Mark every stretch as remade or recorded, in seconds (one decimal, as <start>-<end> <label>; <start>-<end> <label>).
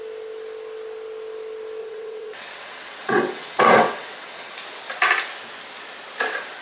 0.0-1.8 recorded; 1.8-4.5 remade; 4.5-6.6 recorded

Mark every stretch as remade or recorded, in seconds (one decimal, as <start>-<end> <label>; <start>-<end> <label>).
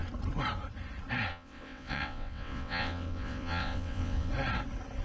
0.0-1.3 recorded; 1.3-4.3 remade; 4.3-5.0 recorded